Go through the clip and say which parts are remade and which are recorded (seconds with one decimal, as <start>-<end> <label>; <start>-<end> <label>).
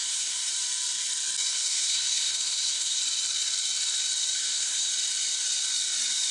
0.0-0.5 remade; 0.5-1.5 recorded; 1.5-3.0 remade; 3.0-4.4 recorded; 4.4-4.9 remade; 4.9-6.3 recorded